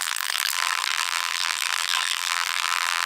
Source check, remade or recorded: remade